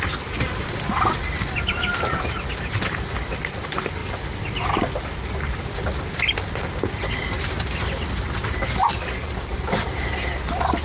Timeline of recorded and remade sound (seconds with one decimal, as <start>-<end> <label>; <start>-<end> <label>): 0.0-10.8 recorded